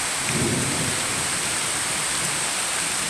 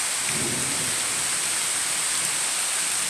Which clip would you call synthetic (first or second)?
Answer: first